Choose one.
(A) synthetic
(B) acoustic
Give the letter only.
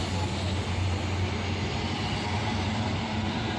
B